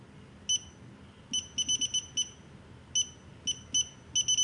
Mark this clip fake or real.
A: real